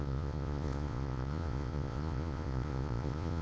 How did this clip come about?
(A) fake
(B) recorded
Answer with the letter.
A